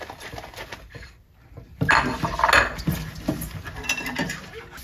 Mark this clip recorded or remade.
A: recorded